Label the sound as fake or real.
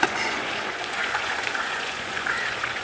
fake